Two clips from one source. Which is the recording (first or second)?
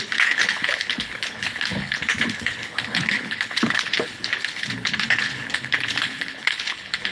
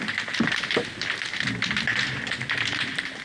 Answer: second